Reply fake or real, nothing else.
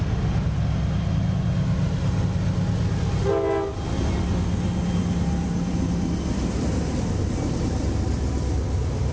real